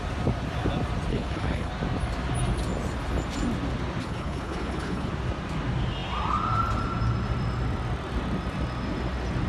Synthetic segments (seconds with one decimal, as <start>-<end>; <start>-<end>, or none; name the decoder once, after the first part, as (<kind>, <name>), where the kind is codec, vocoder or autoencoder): 1.1-1.7 (codec, HILCodec); 4.0-5.1